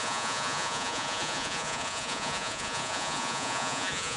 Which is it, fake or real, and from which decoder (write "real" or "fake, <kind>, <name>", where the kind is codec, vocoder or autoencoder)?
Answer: fake, vocoder, Vocos